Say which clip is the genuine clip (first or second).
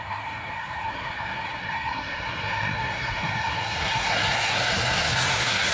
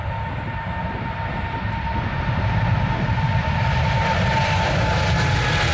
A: second